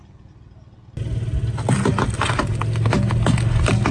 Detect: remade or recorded recorded